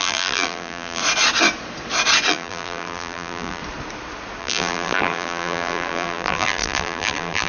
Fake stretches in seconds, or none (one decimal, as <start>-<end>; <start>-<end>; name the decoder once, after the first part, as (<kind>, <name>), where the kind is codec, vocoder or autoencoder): 0.0-1.0 (vocoder, BigVGAN v2); 2.3-3.6; 4.4-7.5

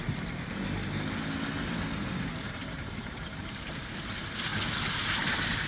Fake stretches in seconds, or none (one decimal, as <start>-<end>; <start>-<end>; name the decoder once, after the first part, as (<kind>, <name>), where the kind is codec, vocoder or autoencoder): 0.0-0.8 (vocoder, BigVGAN v2); 1.9-5.7

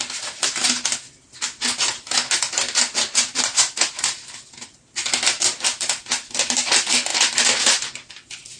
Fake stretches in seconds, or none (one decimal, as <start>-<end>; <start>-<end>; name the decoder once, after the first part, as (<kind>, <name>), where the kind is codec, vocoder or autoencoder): 7.1-7.6 (vocoder, BigVGAN v2)

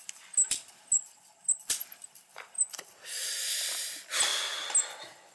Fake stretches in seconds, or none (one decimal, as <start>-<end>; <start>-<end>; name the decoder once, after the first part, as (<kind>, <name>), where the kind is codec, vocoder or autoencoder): 1.4-1.8 (vocoder, BigVGAN v2); 2.4-4.3

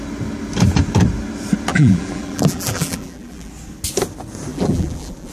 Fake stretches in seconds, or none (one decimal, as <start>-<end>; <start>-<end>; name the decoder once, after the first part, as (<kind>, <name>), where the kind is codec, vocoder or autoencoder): 1.7-3.5 (vocoder, BigVGAN v2); 4.5-5.3

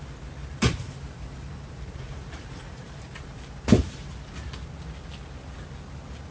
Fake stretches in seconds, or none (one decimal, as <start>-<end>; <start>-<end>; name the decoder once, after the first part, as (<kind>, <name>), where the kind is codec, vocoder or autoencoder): 0.4-3.5 (vocoder, BigVGAN v2)